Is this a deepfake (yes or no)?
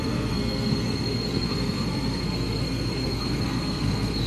yes